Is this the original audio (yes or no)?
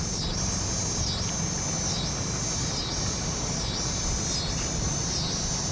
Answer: yes